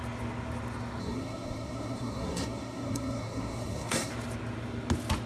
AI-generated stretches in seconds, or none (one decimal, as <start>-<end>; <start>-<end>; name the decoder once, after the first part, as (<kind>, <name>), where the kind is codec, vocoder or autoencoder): 1.0-4.1 (codec, SNAC)